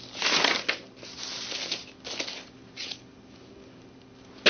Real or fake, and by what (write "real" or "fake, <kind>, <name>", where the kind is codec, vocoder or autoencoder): real